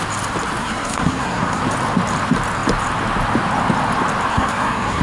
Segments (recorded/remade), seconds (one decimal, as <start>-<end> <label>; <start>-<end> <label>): 0.0-0.6 recorded; 0.6-1.6 remade; 1.6-4.3 recorded; 4.3-5.0 remade

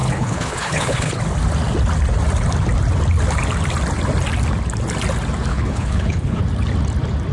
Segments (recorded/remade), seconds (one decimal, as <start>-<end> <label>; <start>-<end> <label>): 0.0-1.2 remade; 1.2-5.5 recorded; 5.5-6.4 remade; 6.4-7.3 recorded

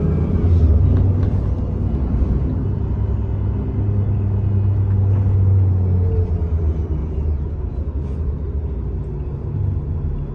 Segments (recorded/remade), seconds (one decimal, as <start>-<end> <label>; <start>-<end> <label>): 0.0-7.0 recorded; 7.0-8.3 remade; 8.3-10.3 recorded

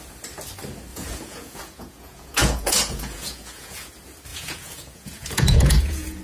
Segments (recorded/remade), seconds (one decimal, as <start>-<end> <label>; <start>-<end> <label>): 0.0-0.9 recorded; 0.9-3.9 remade; 3.9-4.3 recorded; 4.3-6.2 remade

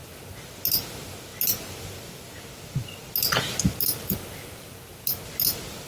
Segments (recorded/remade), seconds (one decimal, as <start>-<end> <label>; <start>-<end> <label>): 0.0-5.9 recorded

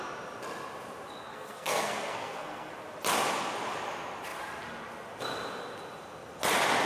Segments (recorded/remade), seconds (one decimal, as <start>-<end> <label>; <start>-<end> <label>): 0.0-1.3 recorded; 1.3-2.7 remade; 2.7-6.8 recorded

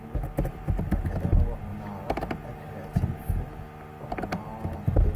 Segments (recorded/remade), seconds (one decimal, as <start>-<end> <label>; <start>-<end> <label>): 0.0-5.2 recorded

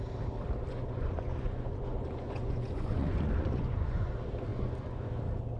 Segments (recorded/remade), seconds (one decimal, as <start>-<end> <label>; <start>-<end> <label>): 0.0-0.7 recorded; 0.7-4.1 remade; 4.1-4.5 recorded; 4.5-5.1 remade; 5.1-5.6 recorded